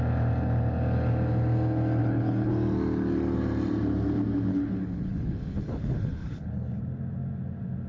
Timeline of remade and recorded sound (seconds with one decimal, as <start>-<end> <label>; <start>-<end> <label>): 0.0-2.0 recorded; 2.0-2.5 remade; 2.5-4.5 recorded; 4.5-6.8 remade; 6.8-7.9 recorded